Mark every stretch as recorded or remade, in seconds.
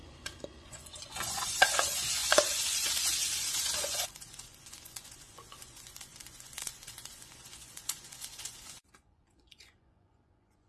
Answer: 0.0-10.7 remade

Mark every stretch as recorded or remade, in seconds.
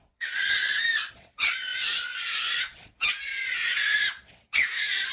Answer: 0.0-0.6 remade; 0.6-1.1 recorded; 1.1-5.1 remade